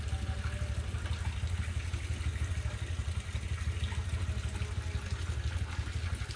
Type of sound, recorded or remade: recorded